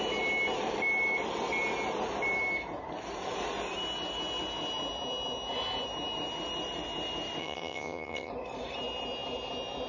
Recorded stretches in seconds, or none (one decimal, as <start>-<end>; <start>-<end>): 0.0-7.4; 8.3-9.9